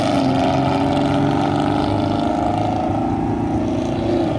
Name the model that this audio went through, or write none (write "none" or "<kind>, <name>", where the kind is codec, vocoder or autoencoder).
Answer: none